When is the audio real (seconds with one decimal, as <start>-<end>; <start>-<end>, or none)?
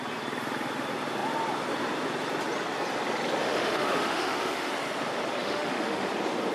0.0-3.4; 4.7-5.4; 6.1-6.5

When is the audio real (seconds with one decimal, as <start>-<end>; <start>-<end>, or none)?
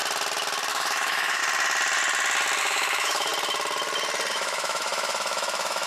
0.0-0.7; 1.4-2.6; 3.3-4.3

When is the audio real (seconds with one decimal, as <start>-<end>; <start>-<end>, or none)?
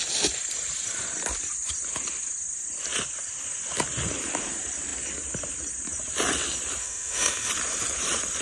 0.0-6.8; 7.5-8.4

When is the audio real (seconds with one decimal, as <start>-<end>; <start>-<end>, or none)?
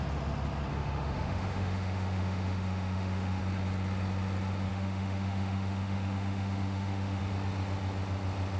0.0-0.7; 3.4-4.7; 7.2-8.6